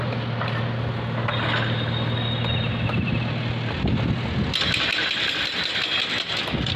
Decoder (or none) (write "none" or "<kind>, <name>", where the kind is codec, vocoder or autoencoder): none